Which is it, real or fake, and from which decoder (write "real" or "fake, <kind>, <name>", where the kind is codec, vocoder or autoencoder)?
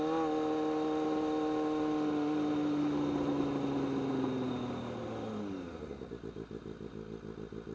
real